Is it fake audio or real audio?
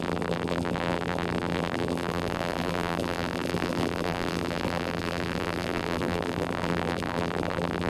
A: fake